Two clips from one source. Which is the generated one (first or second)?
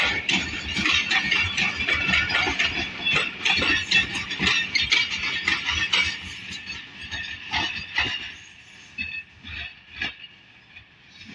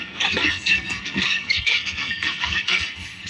second